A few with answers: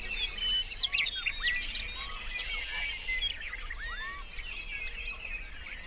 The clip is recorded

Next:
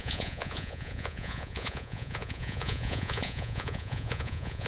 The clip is remade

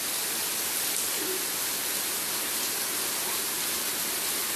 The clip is recorded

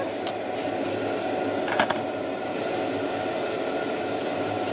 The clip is recorded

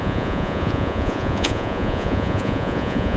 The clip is remade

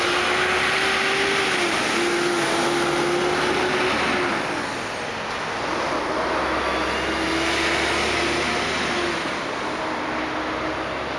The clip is recorded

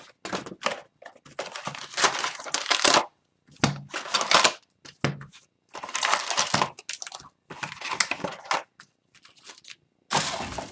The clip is recorded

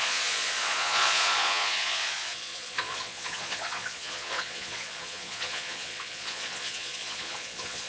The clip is remade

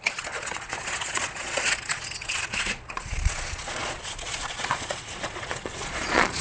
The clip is remade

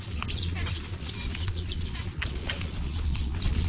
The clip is remade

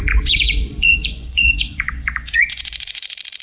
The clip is remade